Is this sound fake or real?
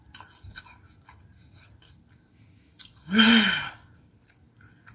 real